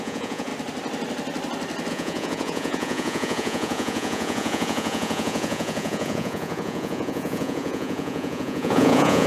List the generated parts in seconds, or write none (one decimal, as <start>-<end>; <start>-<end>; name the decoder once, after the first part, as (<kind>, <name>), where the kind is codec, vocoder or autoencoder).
0.0-0.5 (vocoder, Vocos); 1.9-9.3